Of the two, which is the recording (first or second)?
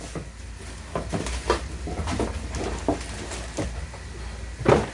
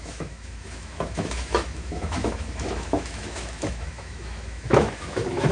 first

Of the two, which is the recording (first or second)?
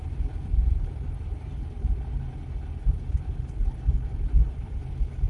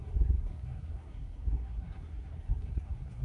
first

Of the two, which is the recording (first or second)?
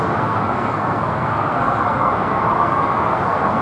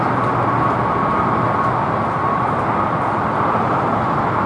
second